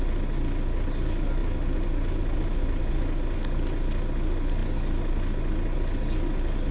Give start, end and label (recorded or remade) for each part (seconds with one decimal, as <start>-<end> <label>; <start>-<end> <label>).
0.0-6.7 recorded